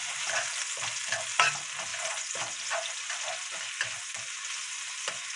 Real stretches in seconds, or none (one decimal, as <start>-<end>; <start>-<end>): 0.0-5.4